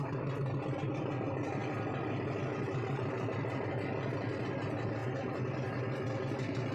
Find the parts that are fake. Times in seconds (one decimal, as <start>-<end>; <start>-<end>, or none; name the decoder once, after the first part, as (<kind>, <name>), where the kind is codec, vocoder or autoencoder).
none